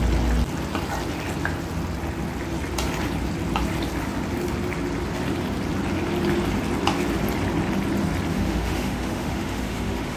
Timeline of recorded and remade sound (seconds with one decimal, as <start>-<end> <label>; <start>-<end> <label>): 0.0-8.3 recorded; 8.3-10.2 remade